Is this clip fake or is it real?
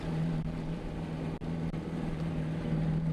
real